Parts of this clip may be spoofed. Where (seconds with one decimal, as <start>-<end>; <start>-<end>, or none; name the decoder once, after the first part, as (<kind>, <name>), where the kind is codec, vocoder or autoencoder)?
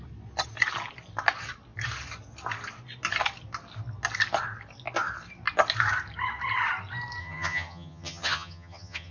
7.2-9.1 (vocoder, HiFi-GAN)